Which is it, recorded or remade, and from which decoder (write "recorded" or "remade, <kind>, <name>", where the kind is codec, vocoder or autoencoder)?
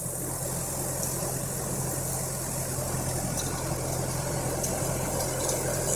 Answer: recorded